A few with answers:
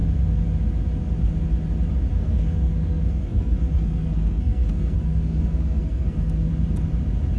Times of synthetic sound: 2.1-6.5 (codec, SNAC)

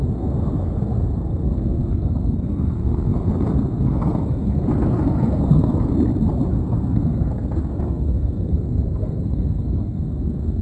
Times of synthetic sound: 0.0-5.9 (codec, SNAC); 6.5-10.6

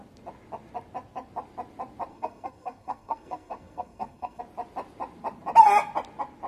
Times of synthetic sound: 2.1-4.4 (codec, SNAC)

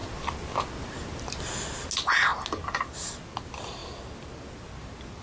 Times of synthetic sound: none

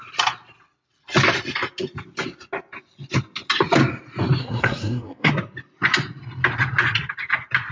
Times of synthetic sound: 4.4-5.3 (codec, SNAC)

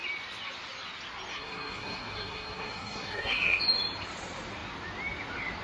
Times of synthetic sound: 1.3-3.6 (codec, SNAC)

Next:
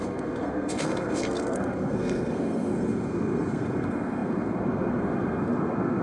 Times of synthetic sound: 0.0-6.0 (codec, SNAC)

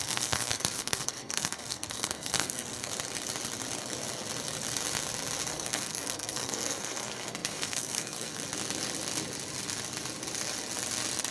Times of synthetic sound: 0.0-2.9 (codec, SNAC); 5.5-8.4